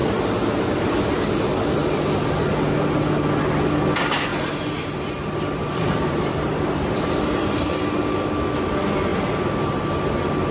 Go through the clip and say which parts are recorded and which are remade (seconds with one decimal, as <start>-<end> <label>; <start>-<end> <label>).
0.0-0.8 remade; 0.8-4.3 recorded; 4.3-7.8 remade; 7.8-10.5 recorded